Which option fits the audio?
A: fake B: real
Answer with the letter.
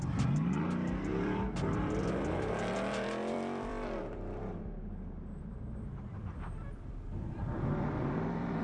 A